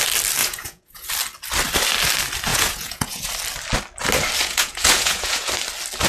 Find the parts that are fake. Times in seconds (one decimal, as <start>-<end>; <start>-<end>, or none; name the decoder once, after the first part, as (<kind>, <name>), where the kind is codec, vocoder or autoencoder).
0.4-1.1 (vocoder, Vocos); 2.5-3.3; 4.4-5.5